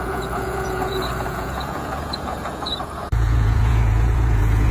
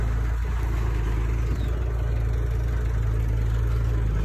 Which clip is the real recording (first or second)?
second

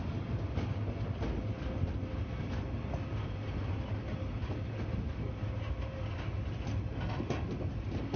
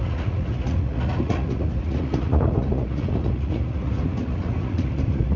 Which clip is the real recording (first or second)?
first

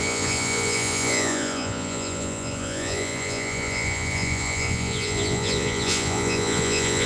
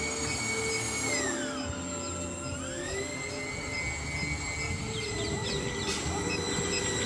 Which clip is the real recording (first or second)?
second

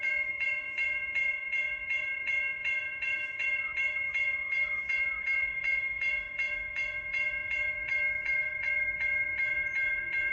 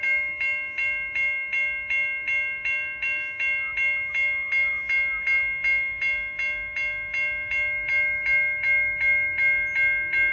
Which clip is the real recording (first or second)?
second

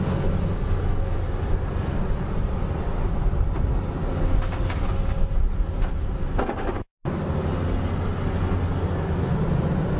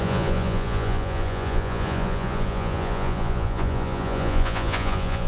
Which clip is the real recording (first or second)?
first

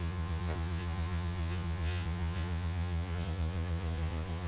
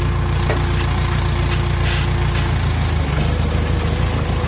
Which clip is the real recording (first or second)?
second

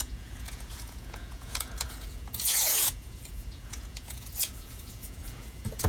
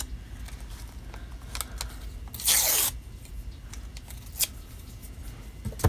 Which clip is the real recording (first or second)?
second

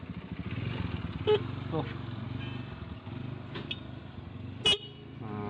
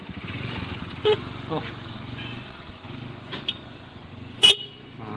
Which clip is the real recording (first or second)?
first